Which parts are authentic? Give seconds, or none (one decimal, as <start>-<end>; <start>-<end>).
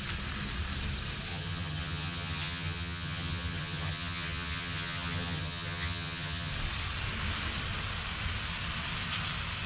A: 0.0-1.3; 6.5-9.7